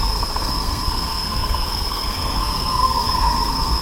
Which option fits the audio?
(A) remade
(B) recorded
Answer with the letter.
A